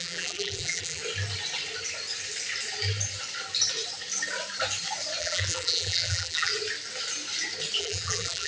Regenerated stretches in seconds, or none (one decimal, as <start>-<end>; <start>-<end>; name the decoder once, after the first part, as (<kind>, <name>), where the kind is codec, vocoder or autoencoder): 0.0-1.0 (vocoder, BigVGAN v2); 5.2-6.5; 7.8-8.5